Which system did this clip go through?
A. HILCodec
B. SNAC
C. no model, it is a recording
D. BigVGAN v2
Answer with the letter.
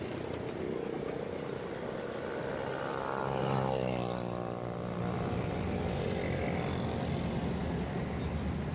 C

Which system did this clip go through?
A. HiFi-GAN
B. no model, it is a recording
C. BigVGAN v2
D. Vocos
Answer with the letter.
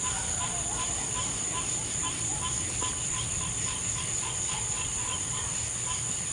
B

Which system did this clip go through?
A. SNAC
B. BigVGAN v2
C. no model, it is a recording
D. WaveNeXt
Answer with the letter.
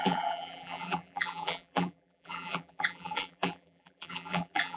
B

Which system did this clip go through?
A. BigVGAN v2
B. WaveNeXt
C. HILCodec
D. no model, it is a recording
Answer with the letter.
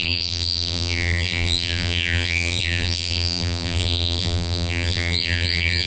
A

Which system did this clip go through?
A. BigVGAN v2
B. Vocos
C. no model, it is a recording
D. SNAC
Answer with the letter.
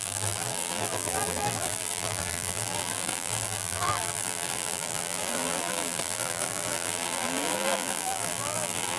A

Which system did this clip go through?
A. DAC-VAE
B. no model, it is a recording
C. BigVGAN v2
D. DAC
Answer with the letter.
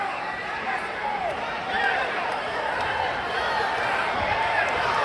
C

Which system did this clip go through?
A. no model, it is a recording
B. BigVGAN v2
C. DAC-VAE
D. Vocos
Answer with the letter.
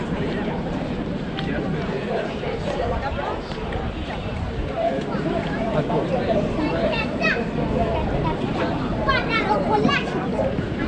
B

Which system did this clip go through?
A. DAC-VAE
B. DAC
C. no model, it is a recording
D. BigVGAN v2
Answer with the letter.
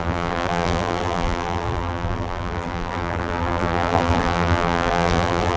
D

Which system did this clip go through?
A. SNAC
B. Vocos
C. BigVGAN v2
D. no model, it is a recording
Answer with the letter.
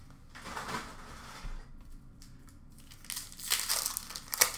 D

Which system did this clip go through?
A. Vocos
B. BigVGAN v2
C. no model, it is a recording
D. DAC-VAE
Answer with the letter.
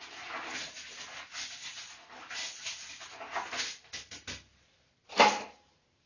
C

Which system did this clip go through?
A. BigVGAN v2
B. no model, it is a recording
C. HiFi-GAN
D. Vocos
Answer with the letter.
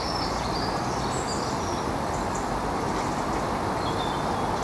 B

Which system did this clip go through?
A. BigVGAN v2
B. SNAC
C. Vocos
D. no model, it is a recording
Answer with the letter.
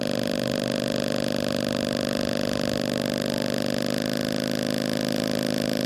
D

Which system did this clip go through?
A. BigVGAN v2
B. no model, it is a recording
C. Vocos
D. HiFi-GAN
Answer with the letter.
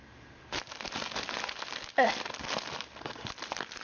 B